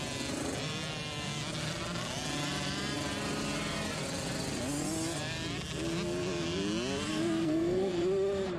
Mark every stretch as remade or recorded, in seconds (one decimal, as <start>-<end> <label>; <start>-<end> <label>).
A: 0.0-7.1 recorded; 7.1-7.9 remade; 7.9-8.6 recorded